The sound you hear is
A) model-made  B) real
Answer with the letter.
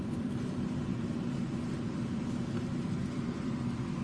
A